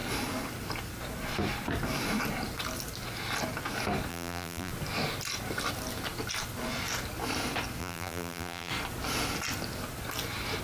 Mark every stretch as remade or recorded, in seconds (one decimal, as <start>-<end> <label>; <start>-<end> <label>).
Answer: 0.0-4.1 recorded; 4.1-4.7 remade; 4.7-7.8 recorded; 7.8-8.7 remade; 8.7-10.6 recorded